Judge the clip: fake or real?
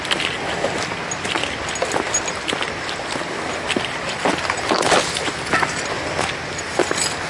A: real